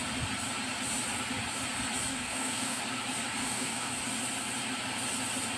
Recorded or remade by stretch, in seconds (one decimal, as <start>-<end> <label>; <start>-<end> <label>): 0.0-2.1 recorded; 2.1-2.8 remade; 2.8-3.4 recorded; 3.4-3.9 remade; 3.9-5.6 recorded